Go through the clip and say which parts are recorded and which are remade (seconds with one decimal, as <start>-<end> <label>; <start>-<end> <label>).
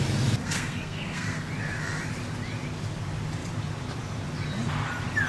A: 0.0-0.4 recorded; 0.4-1.5 remade; 1.5-5.3 recorded